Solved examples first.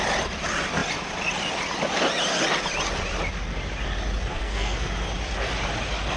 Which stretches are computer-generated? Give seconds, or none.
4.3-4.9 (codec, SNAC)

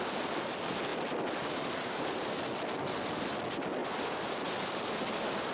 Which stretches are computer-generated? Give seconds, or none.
none

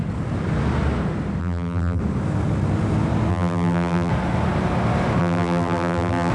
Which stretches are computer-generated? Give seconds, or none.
1.4-2.0 (vocoder, BigVGAN v2); 3.3-4.1; 5.2-6.3

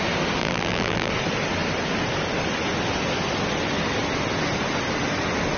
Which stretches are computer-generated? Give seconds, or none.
0.4-1.1 (vocoder, BigVGAN v2)